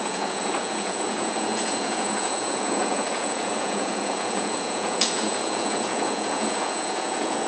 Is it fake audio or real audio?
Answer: fake